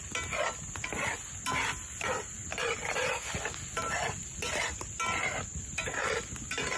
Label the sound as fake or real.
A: real